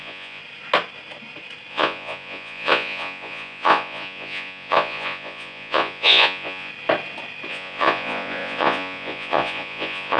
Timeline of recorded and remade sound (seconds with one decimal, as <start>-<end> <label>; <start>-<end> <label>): 0.0-0.4 remade; 0.4-1.7 recorded; 1.7-6.7 remade; 6.7-7.5 recorded; 7.5-10.2 remade